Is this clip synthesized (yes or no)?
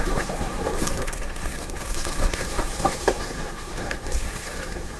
yes